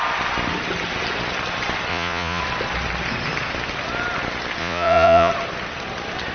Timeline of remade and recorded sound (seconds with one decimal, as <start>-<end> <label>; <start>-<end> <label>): 0.0-1.9 recorded; 1.9-2.4 remade; 2.4-4.6 recorded; 4.6-5.3 remade; 5.3-6.3 recorded